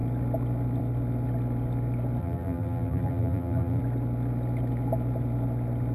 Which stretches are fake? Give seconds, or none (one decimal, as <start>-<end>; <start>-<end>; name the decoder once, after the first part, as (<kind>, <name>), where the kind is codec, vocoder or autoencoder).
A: 2.2-3.8 (vocoder, BigVGAN v2)